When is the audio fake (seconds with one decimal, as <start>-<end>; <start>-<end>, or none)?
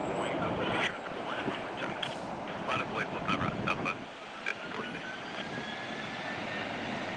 0.8-3.3; 6.8-7.2